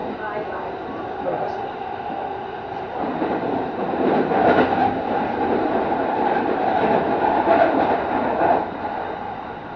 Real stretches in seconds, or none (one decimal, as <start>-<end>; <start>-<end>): 0.0-2.8; 8.2-9.2